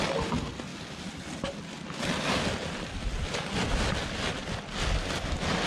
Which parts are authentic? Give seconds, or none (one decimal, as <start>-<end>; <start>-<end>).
0.0-5.7